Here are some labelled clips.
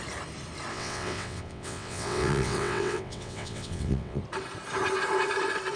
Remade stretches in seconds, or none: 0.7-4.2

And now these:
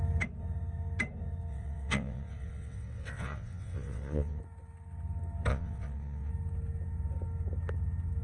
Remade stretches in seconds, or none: 1.5-4.4; 5.5-6.3